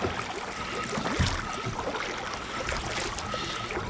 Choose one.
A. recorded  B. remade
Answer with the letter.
A